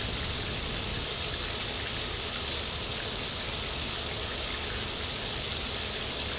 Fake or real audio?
real